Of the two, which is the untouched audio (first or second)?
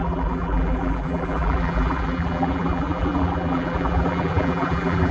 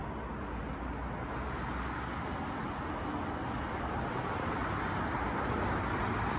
second